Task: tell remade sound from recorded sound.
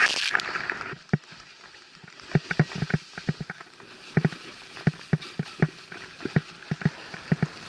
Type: recorded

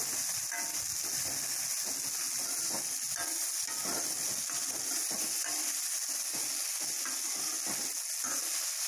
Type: recorded